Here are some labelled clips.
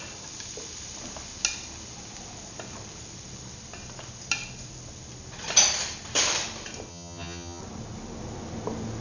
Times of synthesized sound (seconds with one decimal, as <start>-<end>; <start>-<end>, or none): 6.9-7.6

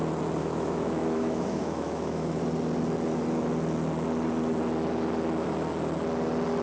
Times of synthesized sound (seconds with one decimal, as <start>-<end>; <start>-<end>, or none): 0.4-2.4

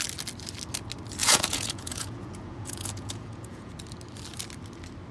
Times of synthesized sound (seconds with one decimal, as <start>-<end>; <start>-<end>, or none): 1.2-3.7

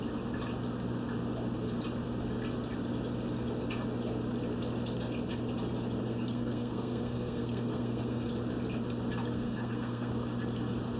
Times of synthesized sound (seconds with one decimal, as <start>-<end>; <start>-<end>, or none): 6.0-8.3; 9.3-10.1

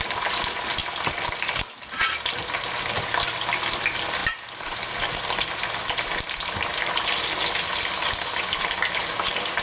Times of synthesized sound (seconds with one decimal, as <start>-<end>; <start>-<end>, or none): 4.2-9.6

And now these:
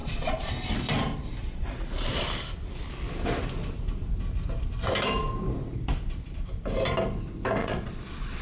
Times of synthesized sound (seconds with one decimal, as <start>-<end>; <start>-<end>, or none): 0.0-0.5; 1.4-2.2; 7.6-8.4

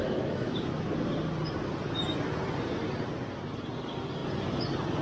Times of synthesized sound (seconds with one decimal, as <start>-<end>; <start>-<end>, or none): 0.0-0.9